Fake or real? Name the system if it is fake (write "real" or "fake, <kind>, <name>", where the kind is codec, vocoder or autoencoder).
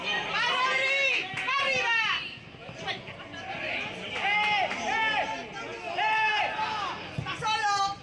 real